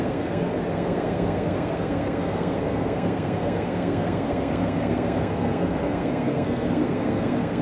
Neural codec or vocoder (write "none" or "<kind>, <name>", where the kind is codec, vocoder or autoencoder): codec, SNAC